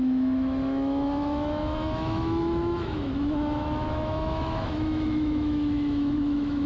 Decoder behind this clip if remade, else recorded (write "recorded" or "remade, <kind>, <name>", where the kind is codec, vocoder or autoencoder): remade, autoencoder, DAC-VAE